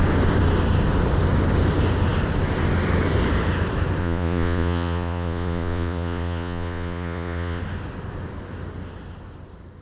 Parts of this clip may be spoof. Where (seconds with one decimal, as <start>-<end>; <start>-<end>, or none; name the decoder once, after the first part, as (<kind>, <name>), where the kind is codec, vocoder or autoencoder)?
4.0-7.6 (vocoder, Vocos)